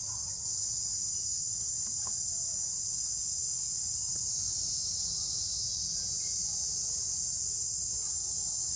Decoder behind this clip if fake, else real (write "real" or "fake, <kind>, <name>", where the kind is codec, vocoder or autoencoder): real